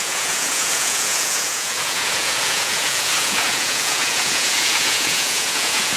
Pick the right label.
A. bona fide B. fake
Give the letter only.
B